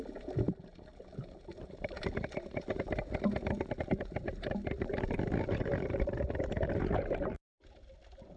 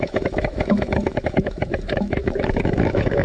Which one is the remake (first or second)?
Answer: second